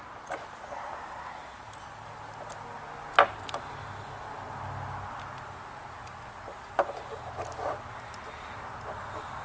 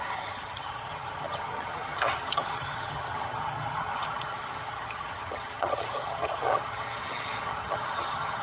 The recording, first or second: first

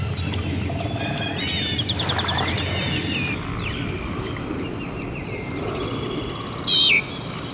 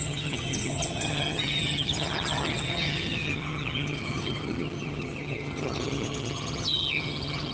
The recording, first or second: first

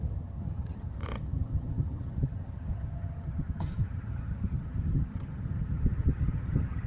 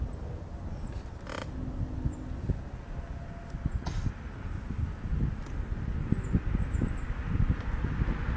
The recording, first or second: second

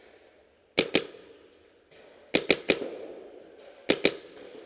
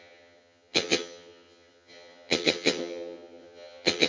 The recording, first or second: first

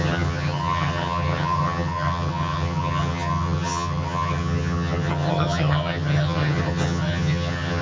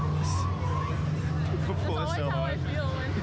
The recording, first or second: second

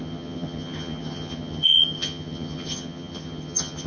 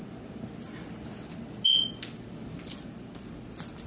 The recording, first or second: second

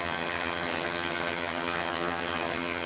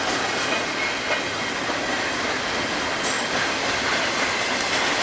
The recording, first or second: second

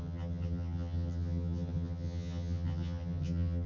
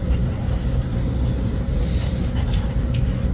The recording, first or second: second